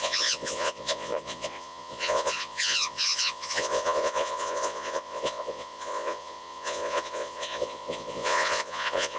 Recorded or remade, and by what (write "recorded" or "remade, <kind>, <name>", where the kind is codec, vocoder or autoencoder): remade, vocoder, Vocos